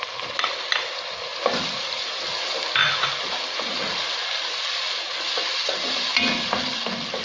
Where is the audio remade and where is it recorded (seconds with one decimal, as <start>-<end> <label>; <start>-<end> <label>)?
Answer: 0.0-1.3 recorded; 1.3-2.5 remade; 2.5-7.2 recorded